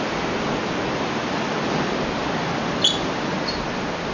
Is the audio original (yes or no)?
yes